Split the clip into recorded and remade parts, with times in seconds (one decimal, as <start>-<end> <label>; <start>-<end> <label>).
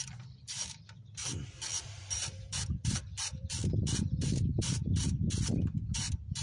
0.0-6.4 remade